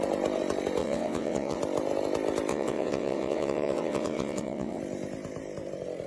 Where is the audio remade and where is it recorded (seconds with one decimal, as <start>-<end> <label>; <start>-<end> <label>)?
0.0-0.8 recorded; 0.8-1.6 remade; 1.6-2.5 recorded; 2.5-4.8 remade; 4.8-6.1 recorded